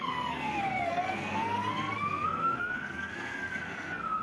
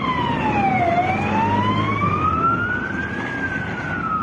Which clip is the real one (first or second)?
second